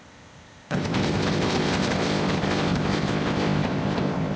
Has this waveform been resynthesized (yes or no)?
yes